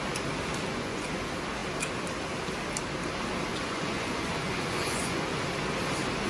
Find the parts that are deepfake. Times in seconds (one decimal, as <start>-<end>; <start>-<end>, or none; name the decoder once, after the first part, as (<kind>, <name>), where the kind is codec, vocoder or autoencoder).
0.7-1.2 (vocoder, Vocos); 3.5-5.4